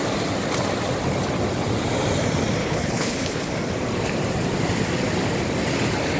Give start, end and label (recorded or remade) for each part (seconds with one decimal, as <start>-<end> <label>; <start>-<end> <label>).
0.0-2.6 recorded; 2.6-3.5 remade; 3.5-6.2 recorded